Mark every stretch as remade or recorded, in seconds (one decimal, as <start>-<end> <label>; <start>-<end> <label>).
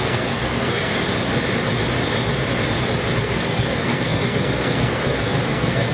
0.0-0.9 remade; 0.9-3.2 recorded; 3.2-5.9 remade